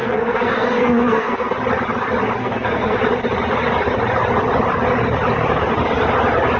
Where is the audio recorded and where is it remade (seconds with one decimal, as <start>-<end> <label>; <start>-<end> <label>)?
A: 0.0-1.5 remade; 1.5-2.4 recorded; 2.4-3.0 remade; 3.0-6.6 recorded